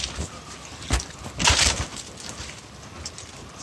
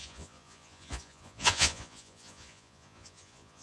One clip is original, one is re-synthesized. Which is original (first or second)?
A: first